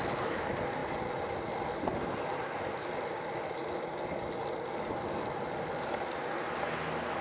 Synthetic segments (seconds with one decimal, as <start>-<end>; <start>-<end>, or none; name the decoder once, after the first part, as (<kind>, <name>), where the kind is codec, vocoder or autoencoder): none